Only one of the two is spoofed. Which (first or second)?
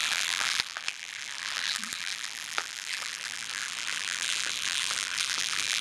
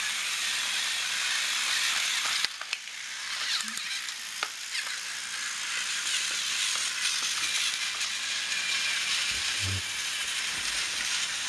first